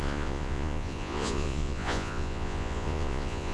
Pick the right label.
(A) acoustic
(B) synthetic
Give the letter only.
B